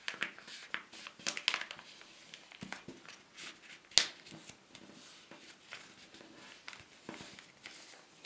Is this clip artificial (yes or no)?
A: no